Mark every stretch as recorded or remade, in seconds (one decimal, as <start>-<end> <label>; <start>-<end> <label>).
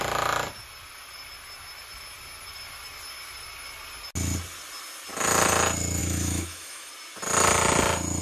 0.0-6.0 recorded; 6.0-6.9 remade; 6.9-8.2 recorded